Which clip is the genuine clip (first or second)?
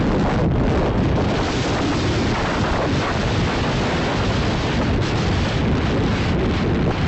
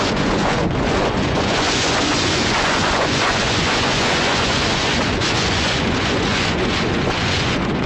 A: first